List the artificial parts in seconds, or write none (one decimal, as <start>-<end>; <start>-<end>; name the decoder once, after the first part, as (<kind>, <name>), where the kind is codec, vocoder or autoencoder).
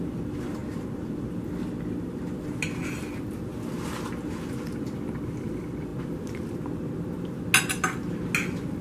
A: none